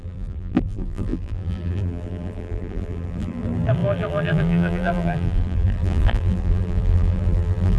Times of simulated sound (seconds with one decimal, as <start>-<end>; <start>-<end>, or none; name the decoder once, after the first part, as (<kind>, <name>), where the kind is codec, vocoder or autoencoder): 0.0-7.8 (vocoder, BigVGAN v2)